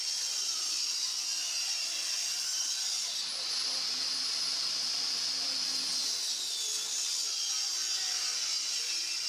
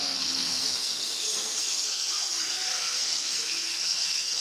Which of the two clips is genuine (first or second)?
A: first